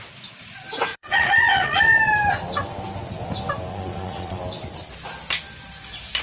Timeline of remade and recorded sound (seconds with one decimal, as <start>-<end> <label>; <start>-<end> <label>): 0.0-0.9 recorded; 0.9-2.0 remade; 2.0-3.7 recorded; 3.7-4.4 remade; 4.4-6.2 recorded